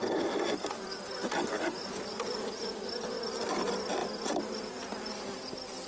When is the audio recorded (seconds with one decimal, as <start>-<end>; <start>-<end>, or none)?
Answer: 0.0-5.9

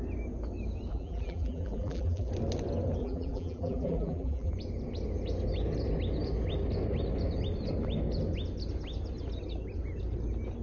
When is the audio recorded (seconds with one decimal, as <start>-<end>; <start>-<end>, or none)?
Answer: 0.0-0.9; 2.3-3.0; 4.5-10.6

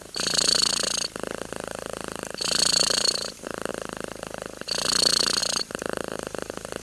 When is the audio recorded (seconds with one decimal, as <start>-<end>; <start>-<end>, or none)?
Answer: 0.6-1.4; 3.7-5.4

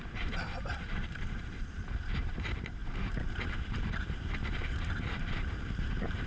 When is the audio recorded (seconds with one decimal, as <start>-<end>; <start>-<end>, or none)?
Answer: none

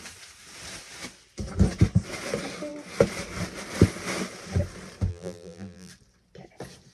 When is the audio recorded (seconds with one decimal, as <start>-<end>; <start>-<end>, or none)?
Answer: 0.0-5.1; 5.9-6.9

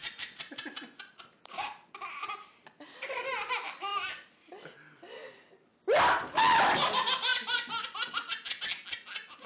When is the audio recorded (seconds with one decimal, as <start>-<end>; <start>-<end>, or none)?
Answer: 3.5-3.9; 4.5-9.5

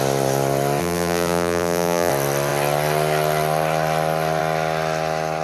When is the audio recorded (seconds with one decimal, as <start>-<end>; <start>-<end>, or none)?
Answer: 0.0-0.8; 2.1-5.4

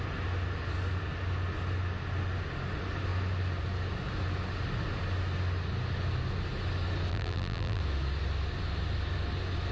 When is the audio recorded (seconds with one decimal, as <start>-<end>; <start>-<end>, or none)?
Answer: 0.0-7.1; 7.8-9.7